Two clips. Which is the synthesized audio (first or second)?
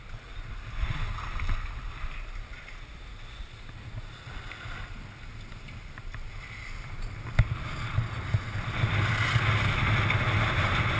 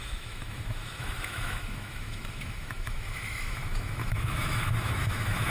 second